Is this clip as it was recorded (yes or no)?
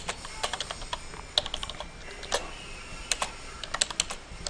yes